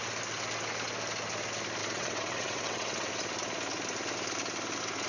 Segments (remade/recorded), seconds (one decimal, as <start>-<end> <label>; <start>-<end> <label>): 0.0-1.8 recorded; 1.8-3.1 remade; 3.1-5.1 recorded